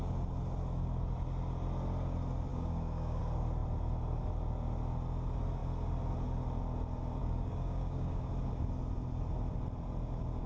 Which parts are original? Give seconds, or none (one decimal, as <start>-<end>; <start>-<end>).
0.0-2.5; 3.2-7.2; 8.3-10.5